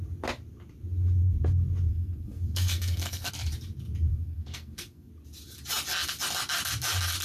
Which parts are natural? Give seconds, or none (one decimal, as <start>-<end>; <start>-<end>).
0.0-1.9; 3.3-4.1; 5.1-7.2